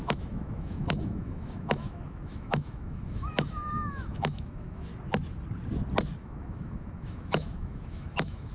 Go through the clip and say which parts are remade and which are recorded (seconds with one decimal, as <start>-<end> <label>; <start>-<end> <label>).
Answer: 0.0-4.9 remade; 4.9-6.2 recorded; 6.2-8.5 remade